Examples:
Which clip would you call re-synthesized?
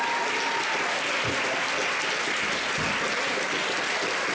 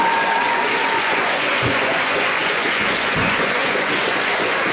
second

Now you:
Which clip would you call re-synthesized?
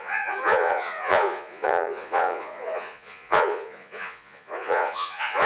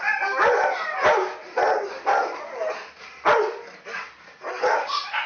first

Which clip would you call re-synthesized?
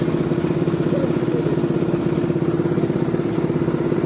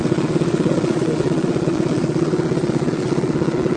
second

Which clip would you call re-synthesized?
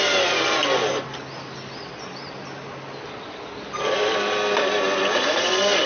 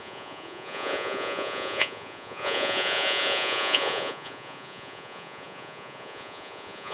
second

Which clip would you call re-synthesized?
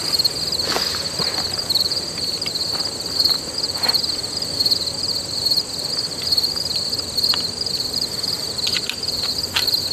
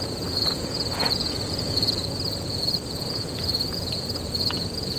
second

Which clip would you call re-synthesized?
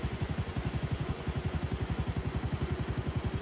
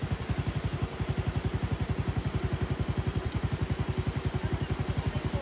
first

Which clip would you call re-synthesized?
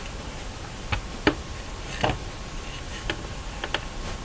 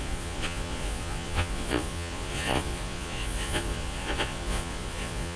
second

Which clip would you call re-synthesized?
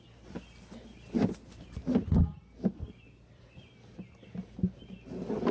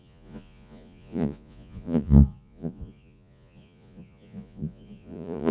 second